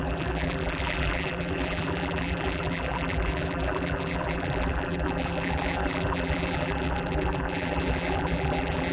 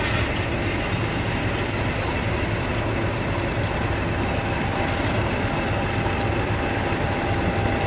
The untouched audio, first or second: second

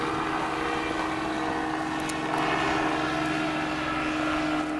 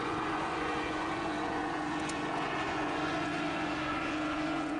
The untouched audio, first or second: first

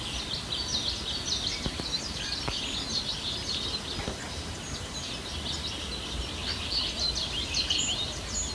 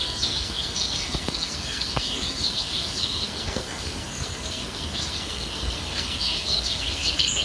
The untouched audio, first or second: first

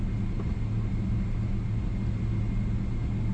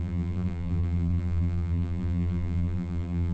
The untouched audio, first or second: first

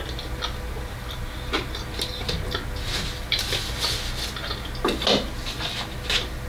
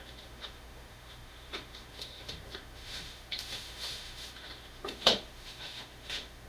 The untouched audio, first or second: first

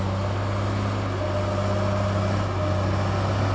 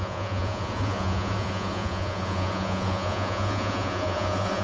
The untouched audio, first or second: first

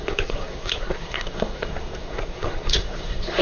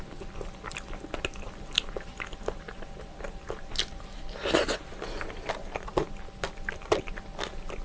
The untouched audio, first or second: second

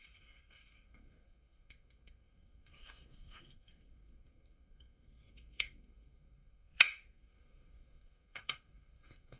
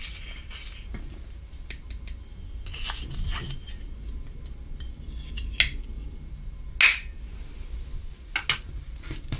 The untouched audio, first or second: second